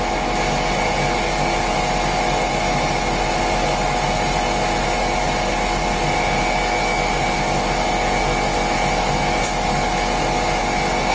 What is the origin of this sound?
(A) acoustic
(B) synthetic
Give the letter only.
A